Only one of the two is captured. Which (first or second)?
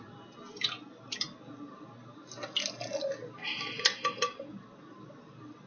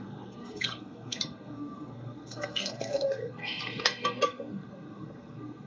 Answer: first